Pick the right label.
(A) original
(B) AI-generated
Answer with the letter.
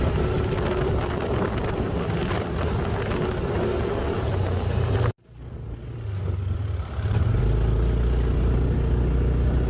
A